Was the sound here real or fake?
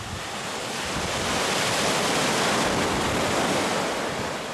real